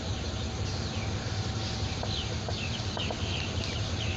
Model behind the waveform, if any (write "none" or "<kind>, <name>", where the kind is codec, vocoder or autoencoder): none